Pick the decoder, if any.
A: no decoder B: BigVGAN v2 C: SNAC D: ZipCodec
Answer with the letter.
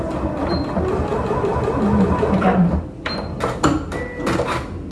A